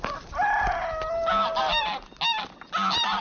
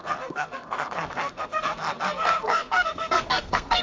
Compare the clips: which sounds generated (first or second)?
second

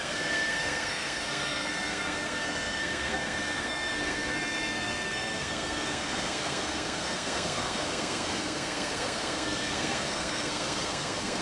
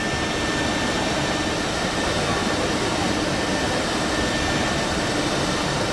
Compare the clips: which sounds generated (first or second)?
first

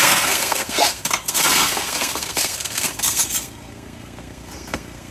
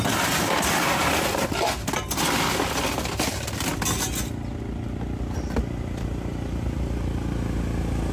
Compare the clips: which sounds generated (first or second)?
first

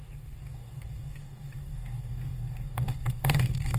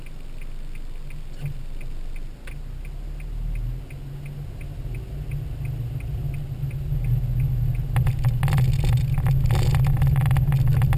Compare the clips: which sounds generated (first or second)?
first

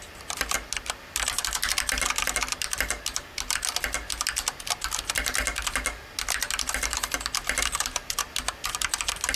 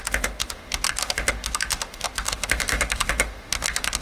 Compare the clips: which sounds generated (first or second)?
second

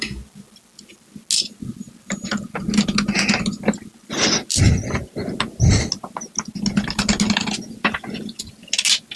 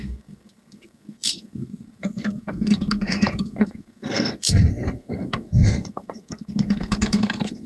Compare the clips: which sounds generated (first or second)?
second